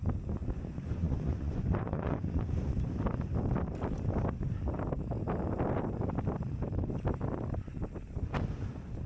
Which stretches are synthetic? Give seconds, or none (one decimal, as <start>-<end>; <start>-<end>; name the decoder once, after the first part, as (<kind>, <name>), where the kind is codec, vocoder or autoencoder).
0.4-2.9 (vocoder, Vocos)